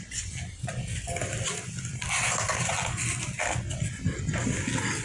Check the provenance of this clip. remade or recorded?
recorded